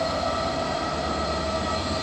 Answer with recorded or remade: recorded